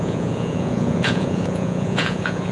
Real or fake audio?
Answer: fake